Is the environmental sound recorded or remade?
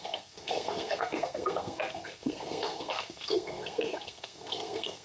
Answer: remade